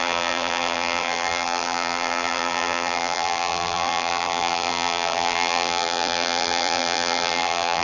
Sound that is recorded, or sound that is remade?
remade